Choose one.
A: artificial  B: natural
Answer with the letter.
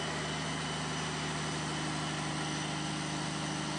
B